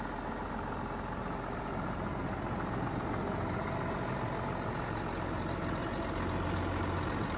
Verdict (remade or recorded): recorded